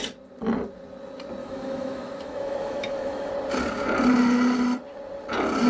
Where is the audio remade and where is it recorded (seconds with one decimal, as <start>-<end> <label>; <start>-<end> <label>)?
0.0-1.4 recorded; 1.4-3.3 remade; 3.3-5.7 recorded